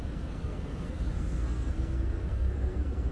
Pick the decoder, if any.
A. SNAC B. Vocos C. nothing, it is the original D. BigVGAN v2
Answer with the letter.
A